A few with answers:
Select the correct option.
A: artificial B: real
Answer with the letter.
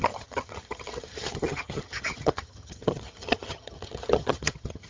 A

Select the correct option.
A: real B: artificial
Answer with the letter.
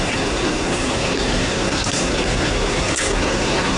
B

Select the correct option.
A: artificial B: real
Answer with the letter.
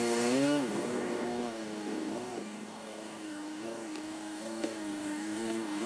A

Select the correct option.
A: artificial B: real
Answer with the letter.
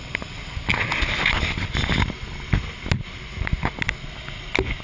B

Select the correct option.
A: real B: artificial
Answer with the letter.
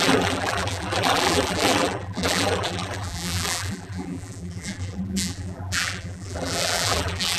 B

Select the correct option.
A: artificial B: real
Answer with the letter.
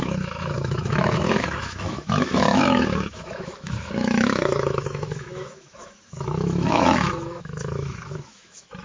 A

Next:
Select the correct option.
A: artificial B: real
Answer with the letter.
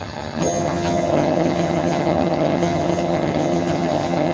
A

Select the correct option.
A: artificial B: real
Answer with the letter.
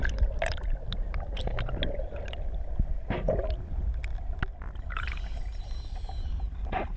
B